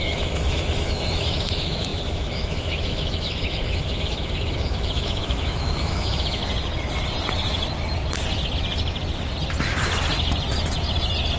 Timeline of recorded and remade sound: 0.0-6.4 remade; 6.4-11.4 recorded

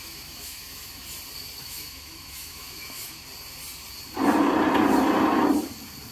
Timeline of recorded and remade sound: 0.0-1.0 remade; 1.0-1.6 recorded; 1.6-3.2 remade; 3.2-6.1 recorded

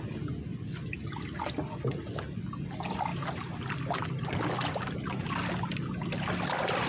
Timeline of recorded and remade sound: 0.0-6.9 recorded

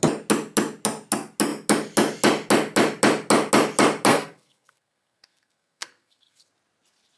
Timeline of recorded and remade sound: 0.0-4.1 recorded; 4.1-6.5 remade; 6.5-7.2 recorded